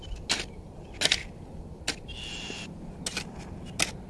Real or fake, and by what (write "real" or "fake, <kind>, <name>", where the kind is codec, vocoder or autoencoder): real